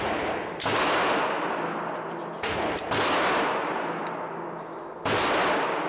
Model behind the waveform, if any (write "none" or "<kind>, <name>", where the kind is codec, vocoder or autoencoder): none